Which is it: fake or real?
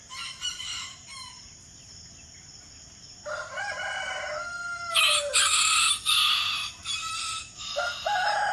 real